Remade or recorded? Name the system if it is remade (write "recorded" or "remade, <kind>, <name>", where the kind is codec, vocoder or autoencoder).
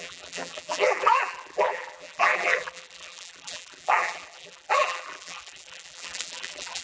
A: remade, vocoder, BigVGAN v2